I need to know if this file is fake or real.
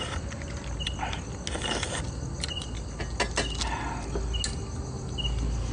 real